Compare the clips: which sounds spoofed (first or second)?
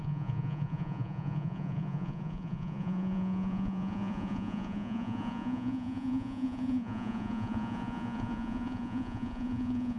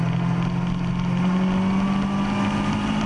first